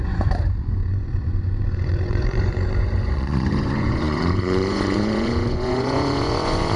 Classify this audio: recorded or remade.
remade